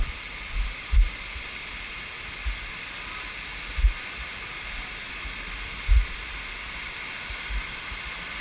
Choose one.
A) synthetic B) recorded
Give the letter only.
B